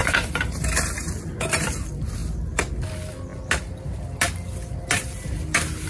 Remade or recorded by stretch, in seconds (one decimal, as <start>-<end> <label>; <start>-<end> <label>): 0.0-0.7 remade; 0.7-5.9 recorded

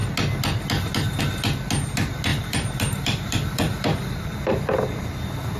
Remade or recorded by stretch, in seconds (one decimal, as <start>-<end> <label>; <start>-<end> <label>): 0.0-2.3 recorded; 2.3-5.0 remade; 5.0-5.6 recorded

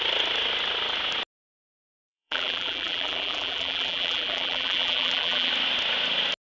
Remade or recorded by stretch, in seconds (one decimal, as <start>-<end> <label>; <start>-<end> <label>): 0.0-1.9 recorded; 1.9-5.5 remade; 5.5-6.5 recorded

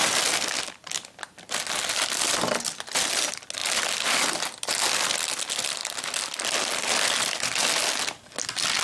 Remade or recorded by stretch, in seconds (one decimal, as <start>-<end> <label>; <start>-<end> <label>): 0.0-8.8 recorded

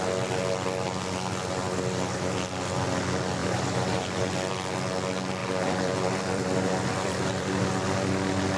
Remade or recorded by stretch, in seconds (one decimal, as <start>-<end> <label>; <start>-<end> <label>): 0.0-3.4 recorded; 3.4-4.5 remade; 4.5-5.4 recorded; 5.4-7.6 remade; 7.6-8.6 recorded

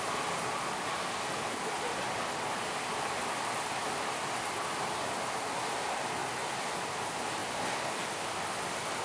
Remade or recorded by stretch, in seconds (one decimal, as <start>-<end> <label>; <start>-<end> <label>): 0.0-9.0 recorded

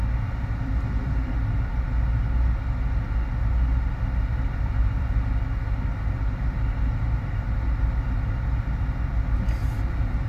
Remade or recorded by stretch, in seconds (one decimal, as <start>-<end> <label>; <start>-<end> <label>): 0.0-4.3 recorded; 4.3-5.3 remade; 5.3-10.3 recorded